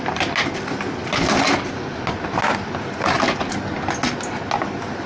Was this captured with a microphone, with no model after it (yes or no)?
yes